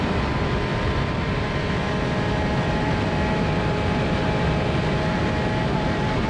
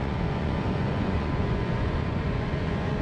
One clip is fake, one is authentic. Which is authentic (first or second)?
first